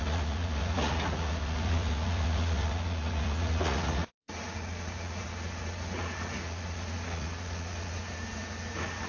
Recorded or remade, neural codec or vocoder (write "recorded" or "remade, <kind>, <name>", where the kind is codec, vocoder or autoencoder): remade, vocoder, Vocos